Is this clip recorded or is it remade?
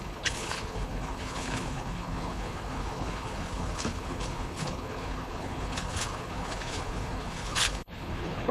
remade